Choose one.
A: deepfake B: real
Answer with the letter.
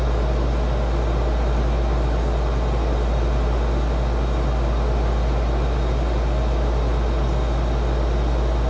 B